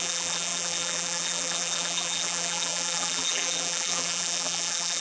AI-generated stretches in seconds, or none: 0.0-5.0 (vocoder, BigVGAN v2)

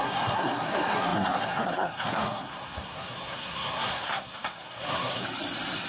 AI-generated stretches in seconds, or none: 0.0-5.2 (codec, SNAC)

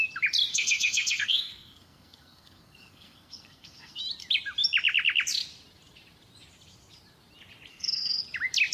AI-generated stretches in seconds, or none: 0.5-4.0 (codec, SNAC); 7.7-8.2

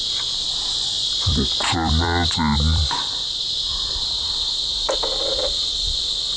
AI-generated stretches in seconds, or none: 0.0-6.4 (vocoder, BigVGAN v2)

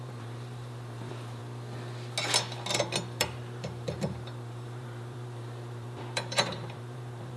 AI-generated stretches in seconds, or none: 0.0-1.4 (vocoder, BigVGAN v2); 3.2-7.4